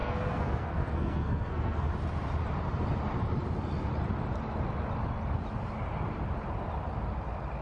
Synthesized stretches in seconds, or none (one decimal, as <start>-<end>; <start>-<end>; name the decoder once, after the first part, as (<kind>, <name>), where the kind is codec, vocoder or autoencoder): 0.0-1.9 (codec, SNAC)